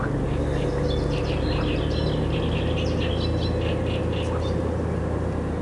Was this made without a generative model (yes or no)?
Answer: yes